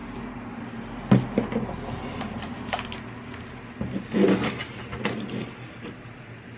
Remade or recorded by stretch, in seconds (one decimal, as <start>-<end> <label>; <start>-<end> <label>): 0.0-6.6 recorded

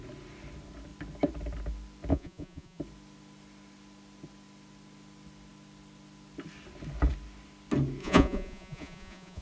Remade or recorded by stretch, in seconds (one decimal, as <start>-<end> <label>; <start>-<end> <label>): 0.0-2.1 recorded; 2.1-2.8 remade; 2.8-8.0 recorded; 8.0-9.4 remade